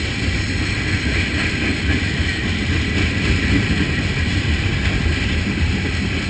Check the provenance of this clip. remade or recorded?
recorded